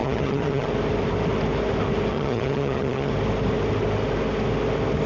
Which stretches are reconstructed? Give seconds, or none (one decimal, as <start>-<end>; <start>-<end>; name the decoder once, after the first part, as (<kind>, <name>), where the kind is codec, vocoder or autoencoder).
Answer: 0.0-0.7 (vocoder, HiFi-GAN); 2.1-3.1